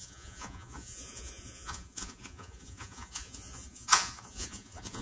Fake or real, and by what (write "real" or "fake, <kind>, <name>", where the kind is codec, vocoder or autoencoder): fake, vocoder, Vocos